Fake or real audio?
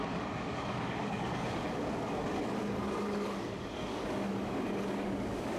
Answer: fake